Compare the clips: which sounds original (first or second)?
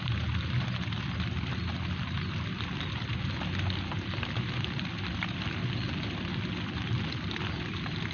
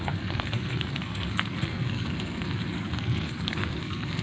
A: first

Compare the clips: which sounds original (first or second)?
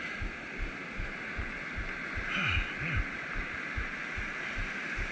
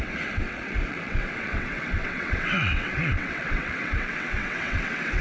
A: first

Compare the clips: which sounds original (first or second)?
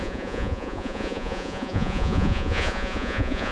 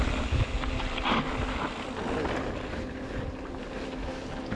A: second